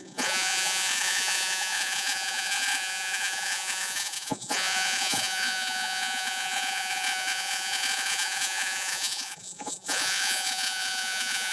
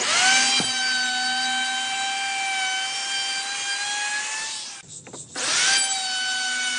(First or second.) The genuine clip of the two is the second